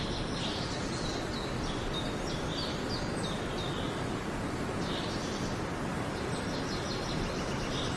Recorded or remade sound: recorded